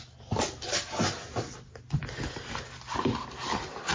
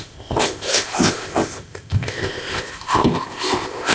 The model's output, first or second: second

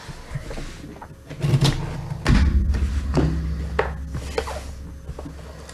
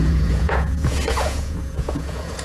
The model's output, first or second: second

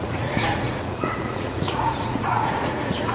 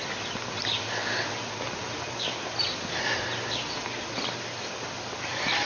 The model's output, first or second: first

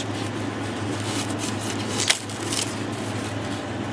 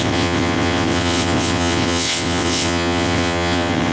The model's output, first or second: second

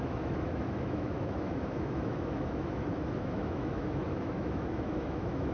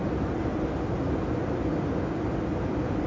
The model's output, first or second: first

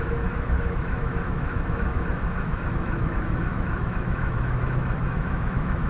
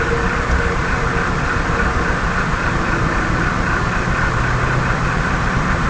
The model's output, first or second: first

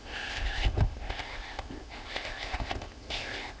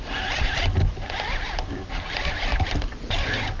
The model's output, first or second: first